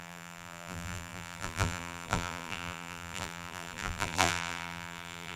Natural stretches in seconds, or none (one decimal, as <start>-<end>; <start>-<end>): none